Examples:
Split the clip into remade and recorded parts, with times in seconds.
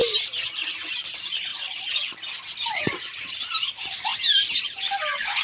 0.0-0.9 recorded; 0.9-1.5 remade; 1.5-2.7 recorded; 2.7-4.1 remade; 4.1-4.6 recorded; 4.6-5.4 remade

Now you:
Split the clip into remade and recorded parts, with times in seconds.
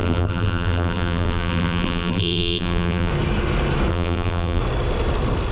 0.0-3.1 remade; 3.1-3.9 recorded; 3.9-4.6 remade; 4.6-5.5 recorded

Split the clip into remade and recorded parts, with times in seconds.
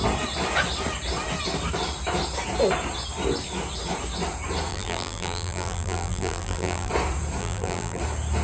0.0-4.7 recorded; 4.7-6.9 remade; 6.9-7.4 recorded; 7.4-8.0 remade; 8.0-8.4 recorded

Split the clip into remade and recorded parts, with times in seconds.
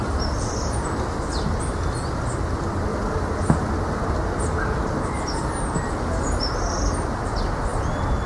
0.0-2.9 recorded; 2.9-3.7 remade; 3.7-7.7 recorded; 7.7-8.3 remade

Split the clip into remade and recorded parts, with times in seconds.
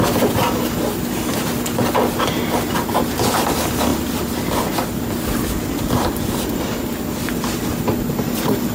0.0-3.9 recorded; 3.9-7.2 remade; 7.2-8.7 recorded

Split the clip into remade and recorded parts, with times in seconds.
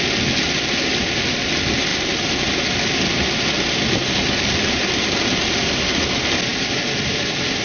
0.0-1.9 recorded; 1.9-4.9 remade; 4.9-7.6 recorded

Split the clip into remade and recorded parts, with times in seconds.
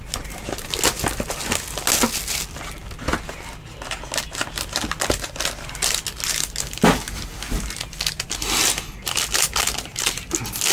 0.0-10.7 recorded